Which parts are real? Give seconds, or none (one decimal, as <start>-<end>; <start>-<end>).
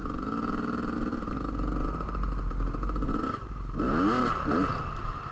3.2-5.3